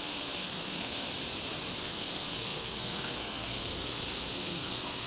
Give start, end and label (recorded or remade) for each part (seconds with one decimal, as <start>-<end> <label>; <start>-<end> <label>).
0.0-1.1 remade; 1.1-1.8 recorded; 1.8-5.1 remade

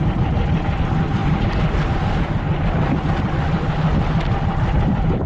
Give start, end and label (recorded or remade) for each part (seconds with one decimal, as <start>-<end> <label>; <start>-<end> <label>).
0.0-5.3 recorded